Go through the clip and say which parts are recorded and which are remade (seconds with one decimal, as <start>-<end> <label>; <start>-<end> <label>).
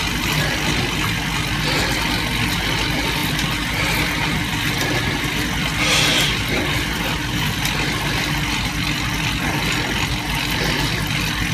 0.0-11.5 recorded